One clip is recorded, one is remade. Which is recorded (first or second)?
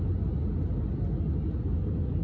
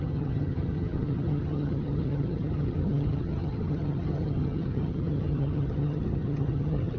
first